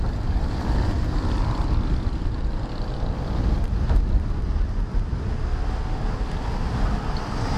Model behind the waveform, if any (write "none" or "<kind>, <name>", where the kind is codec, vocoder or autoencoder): none